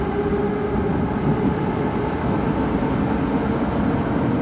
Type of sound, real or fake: real